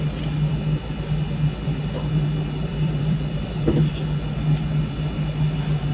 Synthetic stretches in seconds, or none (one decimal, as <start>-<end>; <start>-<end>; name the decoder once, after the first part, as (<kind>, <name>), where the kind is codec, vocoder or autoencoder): 2.7-3.9 (vocoder, BigVGAN v2)